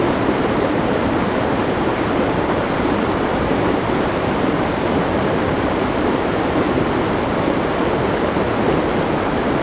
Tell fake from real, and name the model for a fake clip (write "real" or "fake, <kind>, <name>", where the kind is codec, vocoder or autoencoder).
fake, vocoder, BigVGAN v2